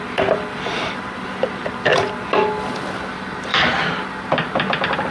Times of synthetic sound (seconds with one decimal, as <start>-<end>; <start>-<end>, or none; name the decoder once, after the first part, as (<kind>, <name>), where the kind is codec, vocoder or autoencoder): 0.0-1.9 (vocoder, BigVGAN v2); 2.9-5.1